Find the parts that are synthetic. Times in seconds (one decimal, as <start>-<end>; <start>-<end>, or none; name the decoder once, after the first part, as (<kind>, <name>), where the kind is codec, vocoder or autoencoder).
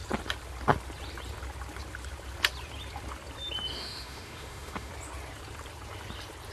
3.7-4.9 (autoencoder, DAC-VAE)